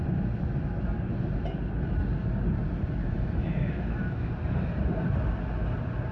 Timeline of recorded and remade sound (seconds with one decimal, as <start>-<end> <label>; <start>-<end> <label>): 0.0-3.0 recorded; 3.0-4.3 remade; 4.3-6.1 recorded